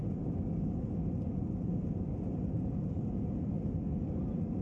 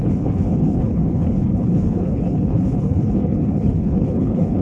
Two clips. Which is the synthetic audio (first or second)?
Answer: second